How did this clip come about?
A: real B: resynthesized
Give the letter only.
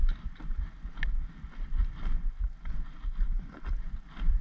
A